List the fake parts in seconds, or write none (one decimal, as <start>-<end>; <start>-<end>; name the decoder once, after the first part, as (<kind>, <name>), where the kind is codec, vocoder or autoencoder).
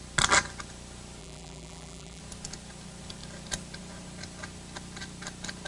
1.2-2.2 (vocoder, BigVGAN v2)